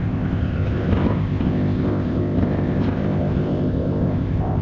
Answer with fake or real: fake